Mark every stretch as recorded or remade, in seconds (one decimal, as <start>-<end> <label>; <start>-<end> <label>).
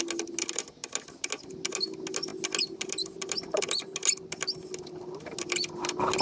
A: 0.0-6.2 recorded